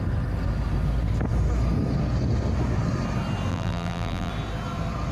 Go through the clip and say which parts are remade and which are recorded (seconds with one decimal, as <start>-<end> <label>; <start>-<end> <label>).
0.0-3.5 recorded; 3.5-4.3 remade; 4.3-5.1 recorded